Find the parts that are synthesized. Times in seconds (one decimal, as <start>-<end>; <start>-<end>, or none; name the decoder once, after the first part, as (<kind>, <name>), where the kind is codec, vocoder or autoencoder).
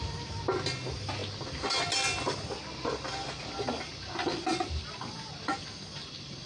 none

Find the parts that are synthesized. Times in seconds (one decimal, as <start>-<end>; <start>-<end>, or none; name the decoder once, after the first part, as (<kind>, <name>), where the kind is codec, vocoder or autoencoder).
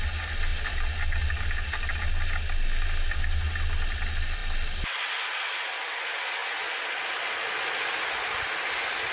none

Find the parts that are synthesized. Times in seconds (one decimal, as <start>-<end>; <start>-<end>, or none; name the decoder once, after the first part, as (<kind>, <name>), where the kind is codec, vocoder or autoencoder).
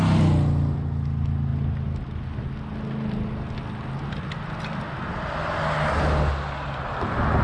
none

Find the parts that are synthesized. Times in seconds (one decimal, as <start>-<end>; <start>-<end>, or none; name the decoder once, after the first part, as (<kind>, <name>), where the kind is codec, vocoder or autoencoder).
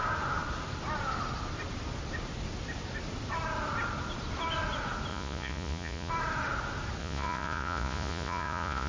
5.1-6.1 (vocoder, Vocos); 7.0-8.9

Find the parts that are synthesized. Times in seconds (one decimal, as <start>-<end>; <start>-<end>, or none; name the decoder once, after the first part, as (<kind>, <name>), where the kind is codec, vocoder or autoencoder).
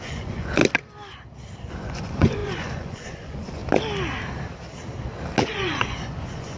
0.0-0.6 (vocoder, Vocos); 1.7-3.6; 5.5-6.6